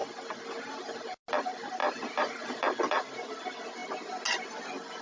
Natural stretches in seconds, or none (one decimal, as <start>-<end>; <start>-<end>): 0.0-1.8; 2.5-5.0